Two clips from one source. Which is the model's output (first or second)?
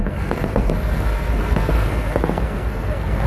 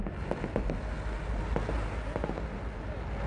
first